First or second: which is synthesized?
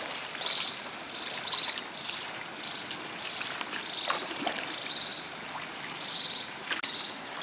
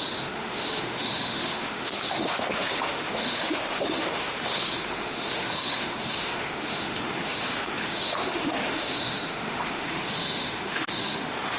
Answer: second